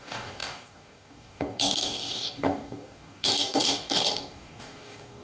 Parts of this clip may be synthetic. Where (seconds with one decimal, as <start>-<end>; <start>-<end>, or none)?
0.0-5.2